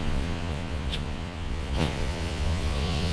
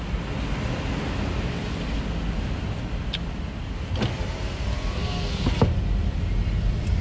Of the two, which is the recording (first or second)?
second